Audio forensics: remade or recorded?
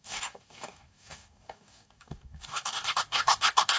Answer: remade